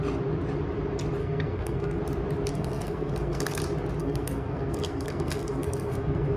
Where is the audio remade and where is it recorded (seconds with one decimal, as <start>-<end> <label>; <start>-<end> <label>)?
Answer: 0.0-1.2 recorded; 1.2-2.0 remade; 2.0-2.5 recorded; 2.5-3.6 remade; 3.6-4.0 recorded; 4.0-6.4 remade